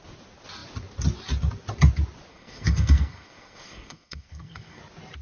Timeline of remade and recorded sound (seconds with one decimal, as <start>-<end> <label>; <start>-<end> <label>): 0.0-2.3 recorded; 2.3-4.8 remade; 4.8-5.2 recorded